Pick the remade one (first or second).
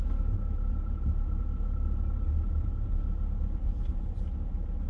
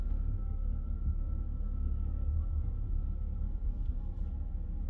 second